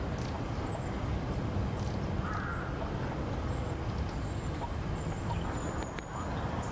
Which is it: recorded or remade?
remade